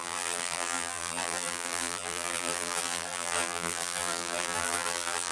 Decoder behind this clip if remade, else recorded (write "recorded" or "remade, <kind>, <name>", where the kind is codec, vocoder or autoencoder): remade, vocoder, BigVGAN v2